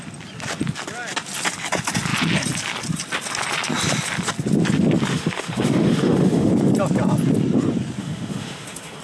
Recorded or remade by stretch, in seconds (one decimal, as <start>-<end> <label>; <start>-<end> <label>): 0.0-5.1 recorded; 5.1-6.5 remade; 6.5-8.0 recorded; 8.0-9.0 remade